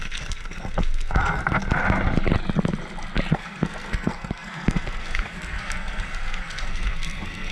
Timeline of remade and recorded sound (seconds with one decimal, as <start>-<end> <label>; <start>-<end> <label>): 0.0-1.4 remade; 1.4-3.3 recorded; 3.3-7.5 remade